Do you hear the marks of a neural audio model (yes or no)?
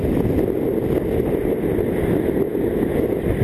no